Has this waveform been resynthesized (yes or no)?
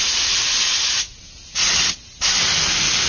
no